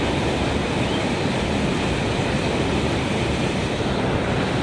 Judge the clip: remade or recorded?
recorded